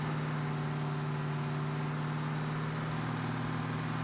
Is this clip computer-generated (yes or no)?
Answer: no